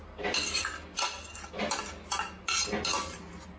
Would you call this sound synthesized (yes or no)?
no